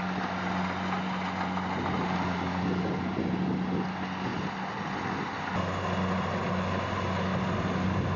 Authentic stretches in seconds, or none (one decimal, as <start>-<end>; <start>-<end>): 0.0-8.2